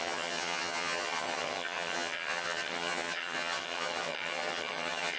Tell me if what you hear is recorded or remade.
remade